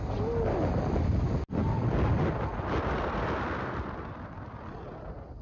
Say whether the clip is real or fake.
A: real